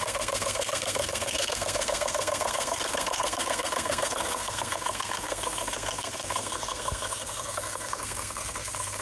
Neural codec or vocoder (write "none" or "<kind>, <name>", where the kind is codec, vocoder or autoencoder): codec, SNAC